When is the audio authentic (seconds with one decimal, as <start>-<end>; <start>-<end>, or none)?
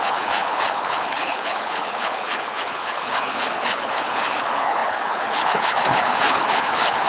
none